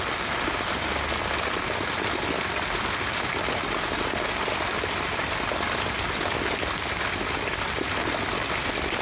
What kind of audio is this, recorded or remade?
recorded